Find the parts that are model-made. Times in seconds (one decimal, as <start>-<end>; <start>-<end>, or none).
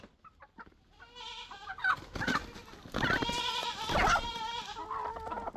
none